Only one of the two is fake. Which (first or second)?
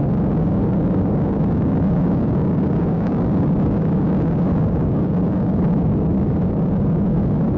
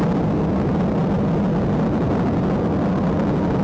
first